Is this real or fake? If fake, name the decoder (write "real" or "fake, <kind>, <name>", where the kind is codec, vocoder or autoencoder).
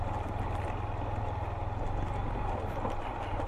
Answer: real